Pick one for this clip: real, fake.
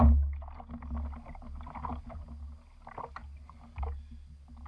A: real